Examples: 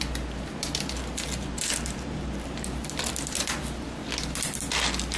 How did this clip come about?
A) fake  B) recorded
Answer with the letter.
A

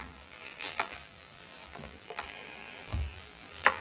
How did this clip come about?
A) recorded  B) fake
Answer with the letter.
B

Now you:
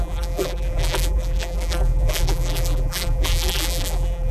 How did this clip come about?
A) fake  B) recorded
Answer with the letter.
A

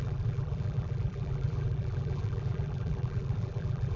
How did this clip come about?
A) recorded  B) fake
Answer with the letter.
B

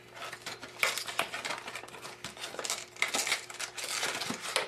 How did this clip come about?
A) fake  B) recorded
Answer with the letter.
B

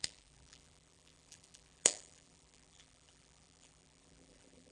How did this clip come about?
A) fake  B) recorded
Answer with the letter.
A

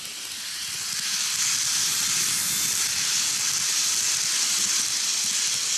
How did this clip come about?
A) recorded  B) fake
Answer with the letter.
A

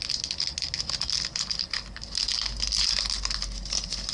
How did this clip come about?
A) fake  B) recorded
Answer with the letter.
B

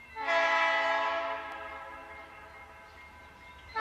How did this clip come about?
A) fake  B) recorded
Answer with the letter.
B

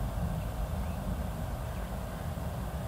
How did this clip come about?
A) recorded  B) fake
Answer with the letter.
A